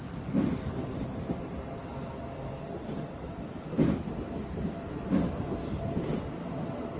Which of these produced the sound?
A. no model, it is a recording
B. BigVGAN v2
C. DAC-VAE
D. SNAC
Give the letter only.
A